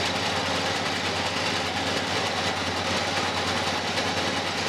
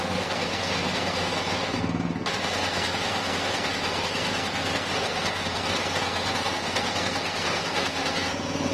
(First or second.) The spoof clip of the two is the second